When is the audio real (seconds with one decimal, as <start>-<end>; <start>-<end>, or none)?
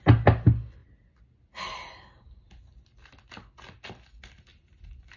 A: 0.0-5.2